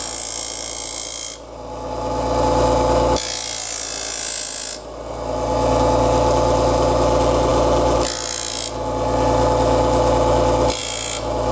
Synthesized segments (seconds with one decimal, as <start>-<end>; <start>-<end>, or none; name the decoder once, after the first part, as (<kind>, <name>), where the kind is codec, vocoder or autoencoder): none